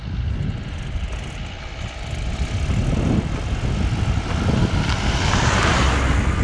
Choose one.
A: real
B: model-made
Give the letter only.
A